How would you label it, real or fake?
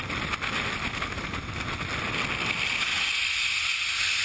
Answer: real